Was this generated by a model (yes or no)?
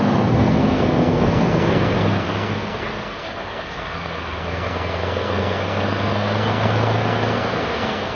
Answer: yes